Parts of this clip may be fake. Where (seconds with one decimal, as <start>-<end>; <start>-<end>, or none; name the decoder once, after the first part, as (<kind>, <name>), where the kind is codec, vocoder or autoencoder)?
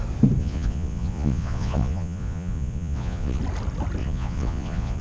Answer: 0.4-3.4 (vocoder, Vocos); 4.0-5.0